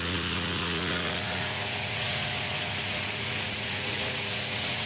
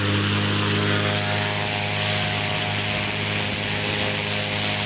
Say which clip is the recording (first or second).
second